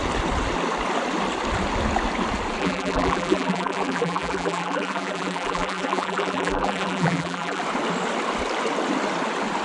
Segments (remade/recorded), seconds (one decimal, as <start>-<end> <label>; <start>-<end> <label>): 0.0-2.6 recorded; 2.6-7.6 remade; 7.6-9.6 recorded